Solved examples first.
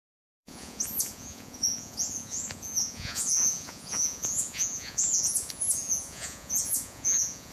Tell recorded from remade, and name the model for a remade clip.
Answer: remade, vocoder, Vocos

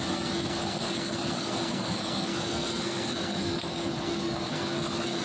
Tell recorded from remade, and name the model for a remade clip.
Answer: remade, codec, SNAC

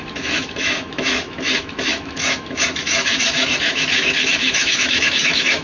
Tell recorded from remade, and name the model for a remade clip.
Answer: remade, autoencoder, DAC-VAE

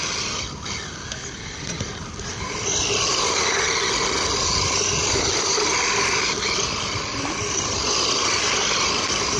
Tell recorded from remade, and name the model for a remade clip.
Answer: recorded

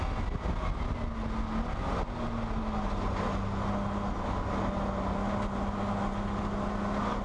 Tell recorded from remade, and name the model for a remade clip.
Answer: recorded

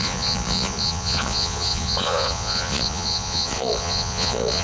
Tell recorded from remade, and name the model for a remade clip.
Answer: remade, vocoder, Vocos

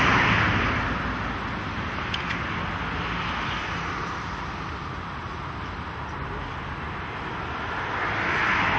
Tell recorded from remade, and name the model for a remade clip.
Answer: recorded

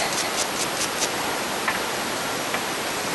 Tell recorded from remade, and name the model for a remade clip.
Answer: recorded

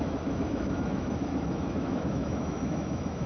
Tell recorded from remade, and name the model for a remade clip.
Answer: remade, autoencoder, DAC-VAE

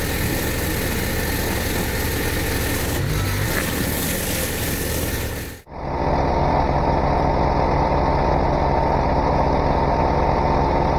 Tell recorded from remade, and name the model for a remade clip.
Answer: recorded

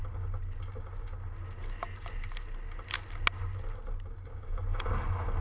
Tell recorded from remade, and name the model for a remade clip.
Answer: recorded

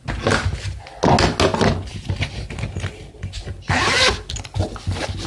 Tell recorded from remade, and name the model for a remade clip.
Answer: recorded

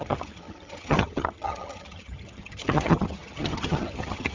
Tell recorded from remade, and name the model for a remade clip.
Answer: remade, vocoder, HiFi-GAN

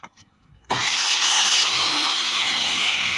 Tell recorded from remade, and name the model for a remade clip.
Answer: remade, codec, SNAC